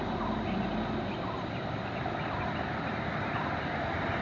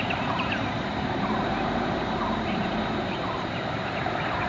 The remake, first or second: second